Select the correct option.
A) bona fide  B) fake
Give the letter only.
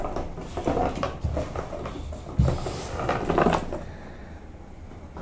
A